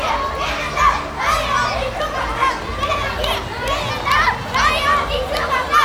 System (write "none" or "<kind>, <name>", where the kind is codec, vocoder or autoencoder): none